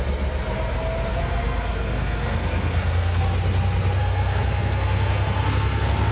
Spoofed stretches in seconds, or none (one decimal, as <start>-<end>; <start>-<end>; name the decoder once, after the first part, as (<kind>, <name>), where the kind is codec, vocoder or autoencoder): 1.1-3.2 (codec, SNAC); 4.0-6.1